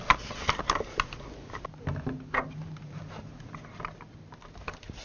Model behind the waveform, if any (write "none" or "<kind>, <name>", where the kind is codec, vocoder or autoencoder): none